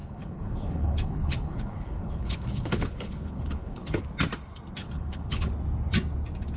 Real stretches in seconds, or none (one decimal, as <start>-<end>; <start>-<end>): 4.0-4.8; 5.5-6.6